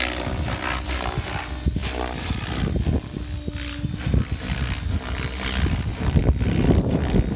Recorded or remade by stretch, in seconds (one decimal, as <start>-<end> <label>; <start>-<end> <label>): 0.0-7.4 recorded